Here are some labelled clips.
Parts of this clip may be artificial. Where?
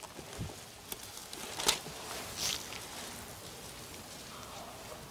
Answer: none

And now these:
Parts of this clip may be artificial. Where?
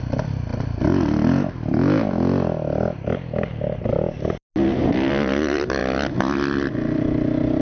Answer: none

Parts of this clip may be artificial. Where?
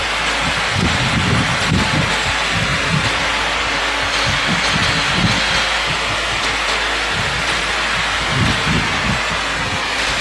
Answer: none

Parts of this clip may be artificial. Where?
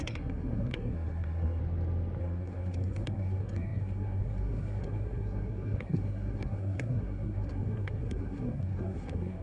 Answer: 0.0-1.6 (codec, SNAC); 2.2-9.4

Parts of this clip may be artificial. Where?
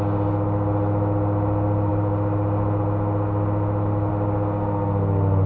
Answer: none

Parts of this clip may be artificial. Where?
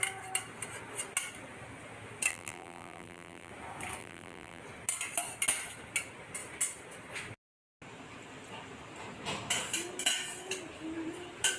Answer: 2.3-3.5 (vocoder, BigVGAN v2); 4.0-4.6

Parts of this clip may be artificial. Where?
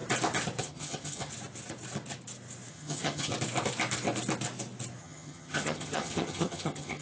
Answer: 0.6-1.3 (vocoder, HiFi-GAN); 2.7-3.3; 5.0-7.0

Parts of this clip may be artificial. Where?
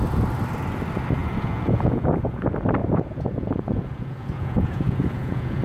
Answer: 1.2-2.4 (vocoder, Vocos); 2.8-5.6